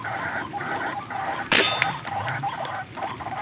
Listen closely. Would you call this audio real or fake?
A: real